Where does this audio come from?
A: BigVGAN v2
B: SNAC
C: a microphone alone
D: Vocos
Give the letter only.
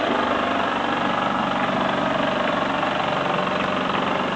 C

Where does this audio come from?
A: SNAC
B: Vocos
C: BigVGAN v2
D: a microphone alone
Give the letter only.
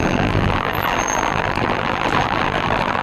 C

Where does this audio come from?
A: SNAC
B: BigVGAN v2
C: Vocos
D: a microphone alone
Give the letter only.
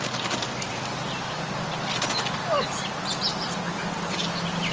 D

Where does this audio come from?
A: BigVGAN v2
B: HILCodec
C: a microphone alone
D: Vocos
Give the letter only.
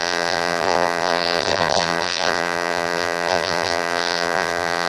A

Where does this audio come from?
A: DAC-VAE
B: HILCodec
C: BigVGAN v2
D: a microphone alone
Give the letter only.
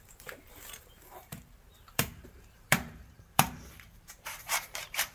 C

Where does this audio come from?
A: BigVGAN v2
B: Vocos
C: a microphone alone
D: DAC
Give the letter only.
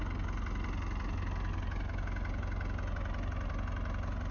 C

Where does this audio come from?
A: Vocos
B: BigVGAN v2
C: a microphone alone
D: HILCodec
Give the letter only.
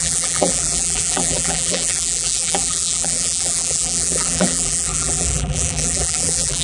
B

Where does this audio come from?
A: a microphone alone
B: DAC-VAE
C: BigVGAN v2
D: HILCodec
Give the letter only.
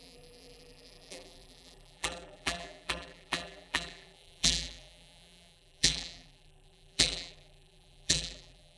C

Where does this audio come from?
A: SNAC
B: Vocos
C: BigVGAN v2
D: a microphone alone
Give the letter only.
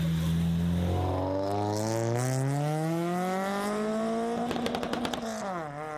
D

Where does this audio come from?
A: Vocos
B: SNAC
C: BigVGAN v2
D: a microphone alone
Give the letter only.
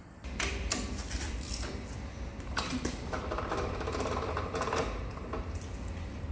C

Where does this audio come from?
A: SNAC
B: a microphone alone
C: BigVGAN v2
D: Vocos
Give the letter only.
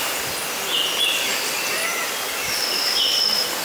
B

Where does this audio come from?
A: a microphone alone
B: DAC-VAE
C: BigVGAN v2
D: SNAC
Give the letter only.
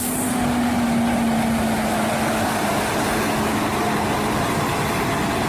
A